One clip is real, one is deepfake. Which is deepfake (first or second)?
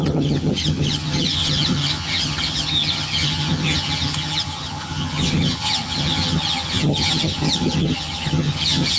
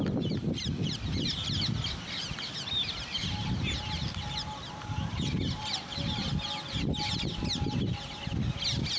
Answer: first